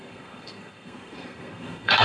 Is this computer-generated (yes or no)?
yes